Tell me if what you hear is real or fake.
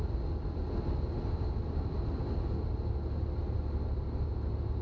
real